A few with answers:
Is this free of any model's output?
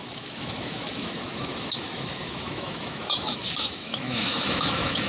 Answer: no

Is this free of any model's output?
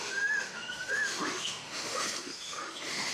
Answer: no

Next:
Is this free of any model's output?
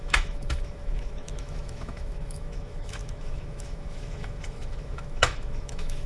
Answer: no